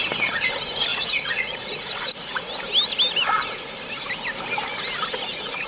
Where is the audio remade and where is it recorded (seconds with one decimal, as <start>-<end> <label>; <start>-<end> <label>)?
0.0-0.9 recorded; 0.9-2.6 remade; 2.6-5.7 recorded